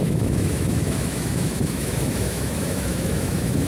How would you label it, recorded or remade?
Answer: remade